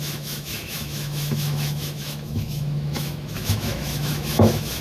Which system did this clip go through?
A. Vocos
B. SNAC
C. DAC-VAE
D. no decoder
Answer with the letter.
C